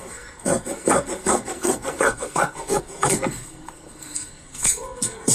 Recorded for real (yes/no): no